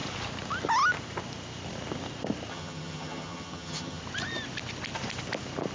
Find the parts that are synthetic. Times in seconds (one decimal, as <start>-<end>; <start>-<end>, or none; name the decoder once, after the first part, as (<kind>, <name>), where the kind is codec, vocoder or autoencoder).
2.5-4.0 (vocoder, HiFi-GAN)

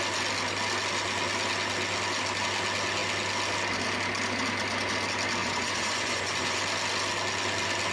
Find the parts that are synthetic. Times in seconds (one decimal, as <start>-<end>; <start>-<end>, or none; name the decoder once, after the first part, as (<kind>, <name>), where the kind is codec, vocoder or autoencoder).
5.4-6.6 (vocoder, Vocos)

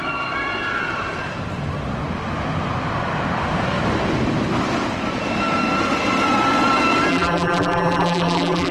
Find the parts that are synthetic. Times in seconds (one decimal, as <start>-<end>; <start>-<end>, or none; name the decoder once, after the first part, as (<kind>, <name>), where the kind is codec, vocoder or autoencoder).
7.1-8.7 (vocoder, BigVGAN v2)